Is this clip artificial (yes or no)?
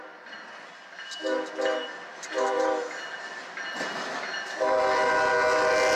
no